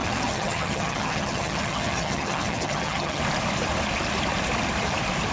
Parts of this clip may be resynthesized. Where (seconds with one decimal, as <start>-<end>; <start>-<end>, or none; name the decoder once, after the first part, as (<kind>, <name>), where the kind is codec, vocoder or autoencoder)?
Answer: 0.0-3.2 (vocoder, HiFi-GAN)